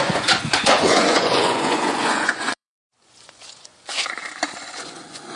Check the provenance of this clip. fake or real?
fake